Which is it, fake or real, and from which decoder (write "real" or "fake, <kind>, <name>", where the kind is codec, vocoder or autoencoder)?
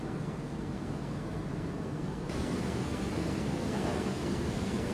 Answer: fake, codec, SNAC